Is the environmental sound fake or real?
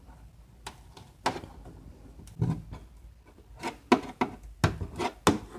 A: real